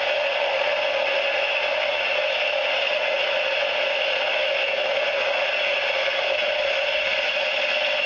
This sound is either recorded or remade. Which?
recorded